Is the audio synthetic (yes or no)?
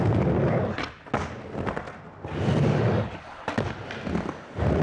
no